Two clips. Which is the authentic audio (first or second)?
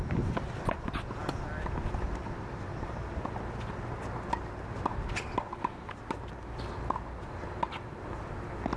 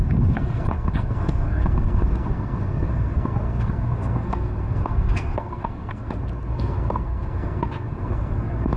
first